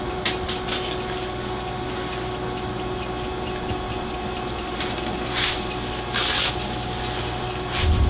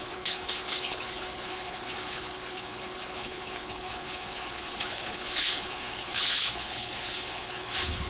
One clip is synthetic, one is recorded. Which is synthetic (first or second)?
second